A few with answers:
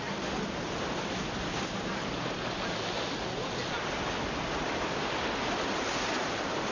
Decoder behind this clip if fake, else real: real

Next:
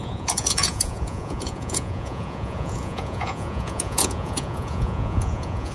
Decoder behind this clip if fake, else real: fake, vocoder, Vocos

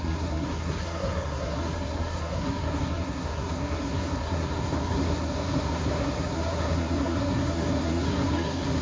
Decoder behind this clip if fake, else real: fake, codec, SNAC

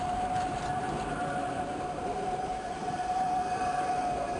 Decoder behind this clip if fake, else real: fake, vocoder, BigVGAN v2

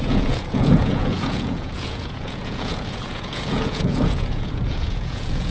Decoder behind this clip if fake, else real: fake, vocoder, Vocos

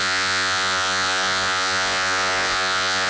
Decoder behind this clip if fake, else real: fake, vocoder, Vocos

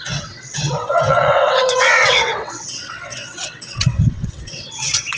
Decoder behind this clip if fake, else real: fake, vocoder, WaveNeXt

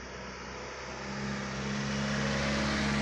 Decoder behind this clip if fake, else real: real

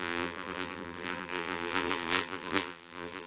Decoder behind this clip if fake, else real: fake, vocoder, BigVGAN v2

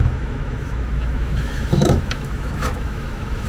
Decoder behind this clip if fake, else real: fake, autoencoder, DAC-VAE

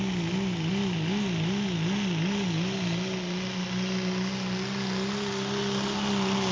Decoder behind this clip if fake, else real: real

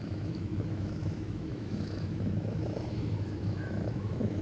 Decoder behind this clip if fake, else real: fake, autoencoder, DAC-VAE